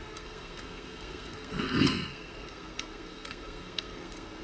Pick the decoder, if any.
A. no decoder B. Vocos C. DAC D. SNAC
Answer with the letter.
D